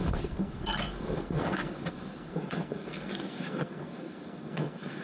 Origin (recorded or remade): remade